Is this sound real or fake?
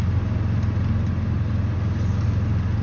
real